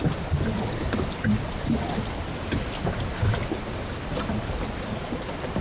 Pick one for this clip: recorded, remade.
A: recorded